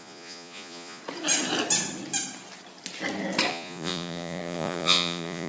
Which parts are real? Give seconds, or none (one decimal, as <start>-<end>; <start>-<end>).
1.0-3.5